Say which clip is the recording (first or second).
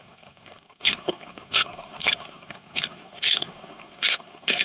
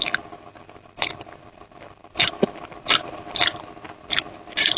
second